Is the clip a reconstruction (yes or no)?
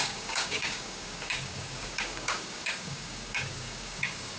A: yes